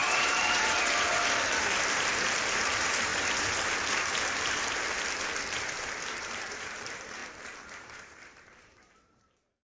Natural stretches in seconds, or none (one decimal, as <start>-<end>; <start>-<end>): 3.1-6.0; 7.2-7.8